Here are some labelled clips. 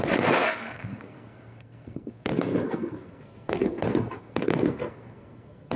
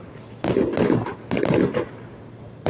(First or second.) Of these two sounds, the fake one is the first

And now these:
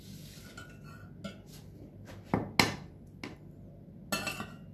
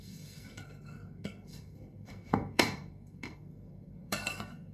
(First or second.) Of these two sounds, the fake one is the second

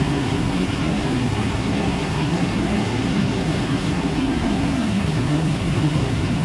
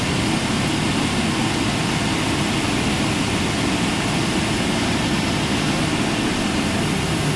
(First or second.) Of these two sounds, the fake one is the first